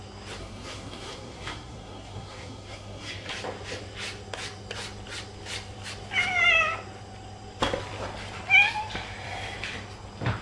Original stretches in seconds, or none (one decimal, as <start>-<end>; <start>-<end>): 0.0-0.4; 3.3-10.4